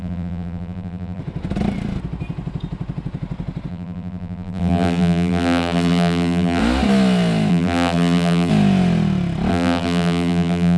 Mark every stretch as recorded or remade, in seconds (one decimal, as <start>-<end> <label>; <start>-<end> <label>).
0.0-1.2 remade; 1.2-3.7 recorded; 3.7-6.6 remade; 6.6-7.5 recorded; 7.5-8.5 remade; 8.5-9.5 recorded; 9.5-10.8 remade